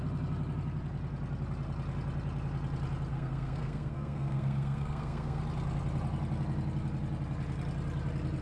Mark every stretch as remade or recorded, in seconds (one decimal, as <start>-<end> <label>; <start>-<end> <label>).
0.0-3.1 recorded; 3.1-5.4 remade; 5.4-8.4 recorded

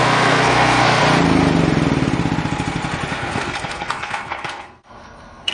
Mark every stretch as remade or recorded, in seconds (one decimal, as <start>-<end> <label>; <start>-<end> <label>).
0.0-1.0 remade; 1.0-3.1 recorded; 3.1-5.5 remade